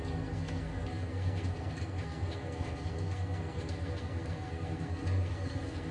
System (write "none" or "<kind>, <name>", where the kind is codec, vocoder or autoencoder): codec, SNAC